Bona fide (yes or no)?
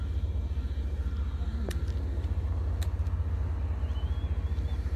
yes